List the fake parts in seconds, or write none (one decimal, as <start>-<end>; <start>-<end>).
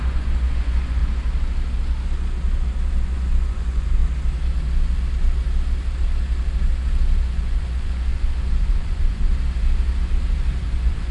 0.0-1.0; 2.9-4.0; 7.2-9.3; 10.6-11.1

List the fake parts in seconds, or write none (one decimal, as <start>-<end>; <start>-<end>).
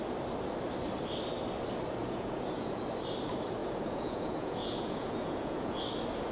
2.0-2.8; 3.6-5.8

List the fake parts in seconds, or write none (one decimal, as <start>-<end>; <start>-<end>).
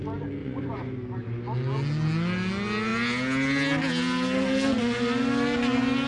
0.4-0.9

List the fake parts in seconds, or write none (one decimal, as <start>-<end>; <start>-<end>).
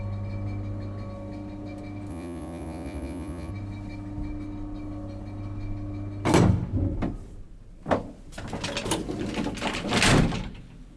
2.1-3.5